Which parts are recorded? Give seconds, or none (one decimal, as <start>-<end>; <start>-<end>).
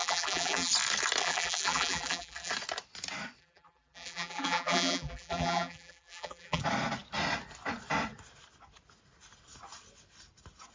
0.7-1.2; 2.5-3.4; 6.6-10.7